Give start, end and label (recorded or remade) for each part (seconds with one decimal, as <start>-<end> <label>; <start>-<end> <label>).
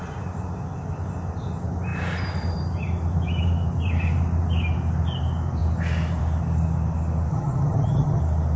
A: 0.0-7.3 recorded; 7.3-8.2 remade; 8.2-8.6 recorded